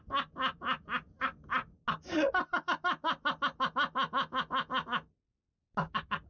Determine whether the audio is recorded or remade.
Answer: recorded